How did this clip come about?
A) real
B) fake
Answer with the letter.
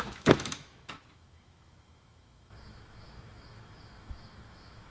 B